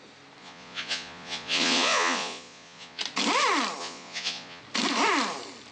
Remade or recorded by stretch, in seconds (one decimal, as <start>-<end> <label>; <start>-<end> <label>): 0.0-0.4 recorded; 0.4-3.0 remade; 3.0-3.8 recorded; 3.8-4.6 remade; 4.6-5.7 recorded

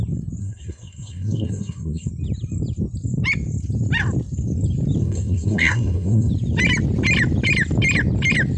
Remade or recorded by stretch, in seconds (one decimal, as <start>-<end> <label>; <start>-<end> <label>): 0.0-0.4 recorded; 0.4-2.1 remade; 2.1-5.0 recorded; 5.0-6.3 remade; 6.3-8.6 recorded

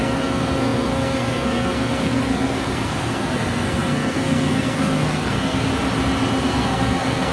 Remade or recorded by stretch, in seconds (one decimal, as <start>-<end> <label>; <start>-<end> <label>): 0.0-5.7 remade; 5.7-6.4 recorded; 6.4-7.3 remade

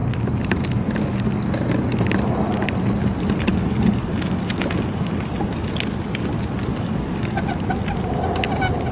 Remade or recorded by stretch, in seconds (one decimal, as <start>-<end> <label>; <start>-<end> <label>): 0.0-3.5 recorded; 3.5-4.1 remade; 4.1-6.7 recorded; 6.7-7.4 remade; 7.4-8.9 recorded

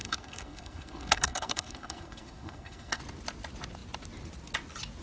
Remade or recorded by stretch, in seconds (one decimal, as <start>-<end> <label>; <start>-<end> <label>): 0.0-3.0 remade; 3.0-5.0 recorded